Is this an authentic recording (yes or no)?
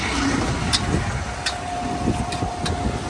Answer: yes